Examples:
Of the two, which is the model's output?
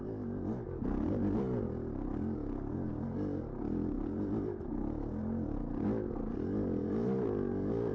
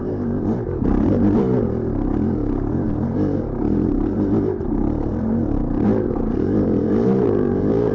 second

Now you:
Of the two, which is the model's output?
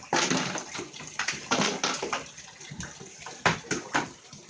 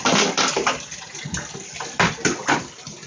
first